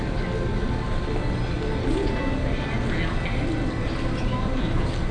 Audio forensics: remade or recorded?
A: recorded